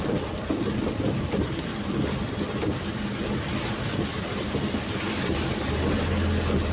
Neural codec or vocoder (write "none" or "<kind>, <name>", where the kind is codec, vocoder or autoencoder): none